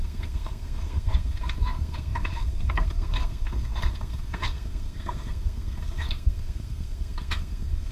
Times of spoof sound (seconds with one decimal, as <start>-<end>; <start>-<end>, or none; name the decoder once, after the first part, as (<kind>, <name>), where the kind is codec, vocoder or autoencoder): 0.0-7.9 (codec, SNAC)